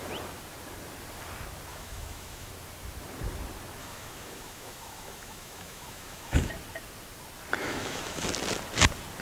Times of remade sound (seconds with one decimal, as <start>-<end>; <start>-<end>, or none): 1.7-2.5; 3.8-6.5; 7.6-8.3

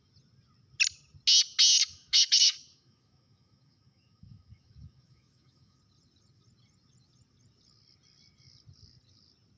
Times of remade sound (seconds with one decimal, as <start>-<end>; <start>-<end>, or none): 1.8-5.8

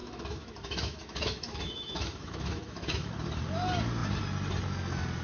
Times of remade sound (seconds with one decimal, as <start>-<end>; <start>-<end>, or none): 0.0-3.1

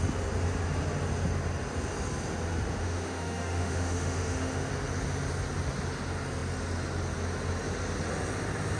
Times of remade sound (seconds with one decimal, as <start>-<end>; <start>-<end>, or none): 2.8-4.7

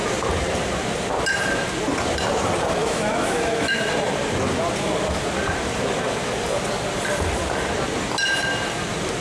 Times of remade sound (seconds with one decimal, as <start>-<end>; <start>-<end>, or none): 2.8-3.9

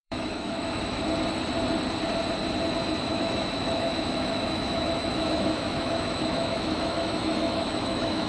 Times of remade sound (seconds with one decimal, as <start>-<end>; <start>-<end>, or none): 0.0-1.0; 3.1-8.3

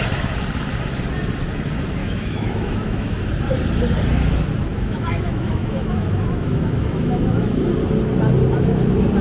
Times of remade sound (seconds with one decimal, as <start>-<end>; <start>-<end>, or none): 2.0-3.3; 4.7-7.7